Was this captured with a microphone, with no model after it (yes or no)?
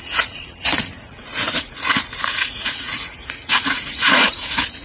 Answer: no